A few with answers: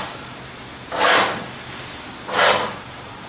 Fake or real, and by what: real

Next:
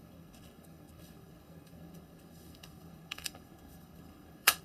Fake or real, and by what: fake, codec, SNAC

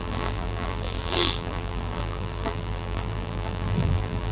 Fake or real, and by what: fake, vocoder, BigVGAN v2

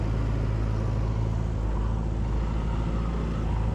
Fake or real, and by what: real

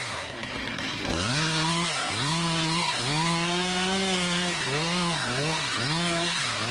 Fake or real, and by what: fake, codec, SNAC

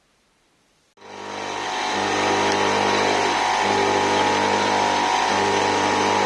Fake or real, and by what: real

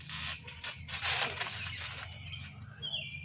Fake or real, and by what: real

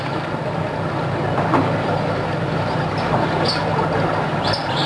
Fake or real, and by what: real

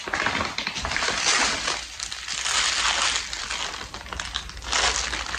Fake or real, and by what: real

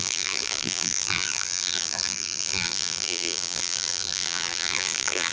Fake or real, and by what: fake, vocoder, BigVGAN v2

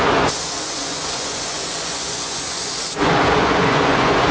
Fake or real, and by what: fake, vocoder, Vocos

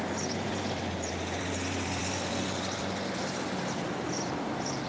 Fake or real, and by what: fake, vocoder, BigVGAN v2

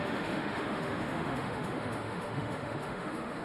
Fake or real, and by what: fake, autoencoder, DAC-VAE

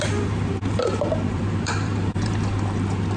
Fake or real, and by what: fake, vocoder, BigVGAN v2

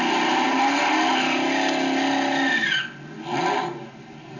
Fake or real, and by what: real